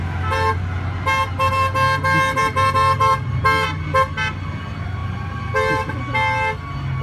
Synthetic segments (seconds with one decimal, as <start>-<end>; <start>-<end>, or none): 2.4-3.4; 5.0-6.0